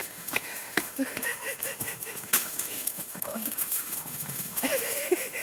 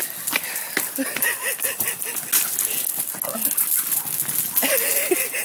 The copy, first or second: first